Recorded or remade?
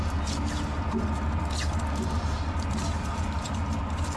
recorded